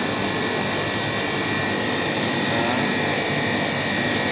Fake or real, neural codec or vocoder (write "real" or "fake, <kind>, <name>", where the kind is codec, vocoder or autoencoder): real